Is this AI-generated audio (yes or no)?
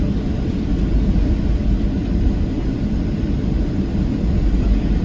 no